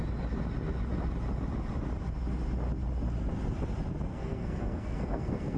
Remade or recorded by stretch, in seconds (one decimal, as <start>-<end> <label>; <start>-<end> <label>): 0.0-4.1 recorded; 4.1-5.6 remade